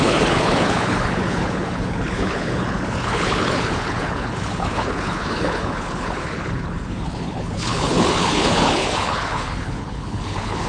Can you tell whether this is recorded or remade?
remade